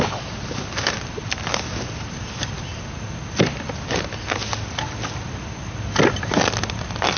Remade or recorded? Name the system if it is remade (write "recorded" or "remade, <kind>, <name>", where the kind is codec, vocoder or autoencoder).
recorded